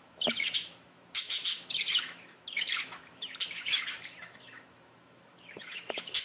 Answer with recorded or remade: remade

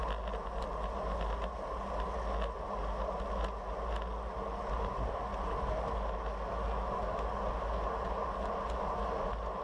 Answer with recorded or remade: recorded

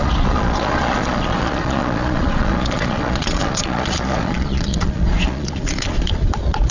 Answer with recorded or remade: remade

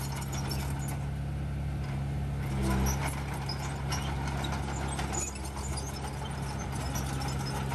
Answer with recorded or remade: recorded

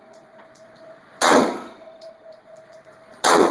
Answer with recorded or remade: remade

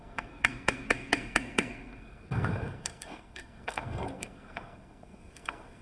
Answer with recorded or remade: remade